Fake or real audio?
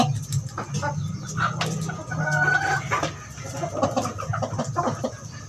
real